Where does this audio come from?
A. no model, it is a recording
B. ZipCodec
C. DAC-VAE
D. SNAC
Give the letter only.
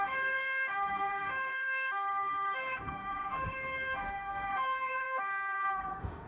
C